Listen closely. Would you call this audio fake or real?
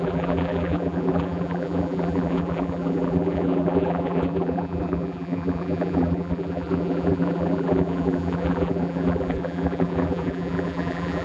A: fake